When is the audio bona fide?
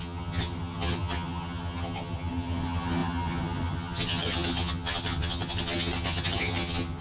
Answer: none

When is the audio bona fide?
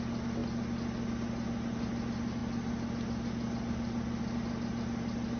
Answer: 0.0-5.4